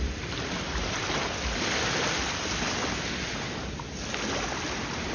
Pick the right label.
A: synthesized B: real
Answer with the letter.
B